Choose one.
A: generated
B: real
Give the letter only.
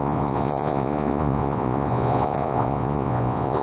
A